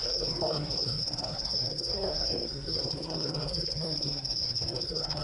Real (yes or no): no